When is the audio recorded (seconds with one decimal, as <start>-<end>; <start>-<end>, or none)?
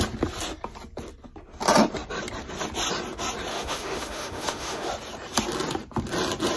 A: 0.0-3.5; 4.9-6.6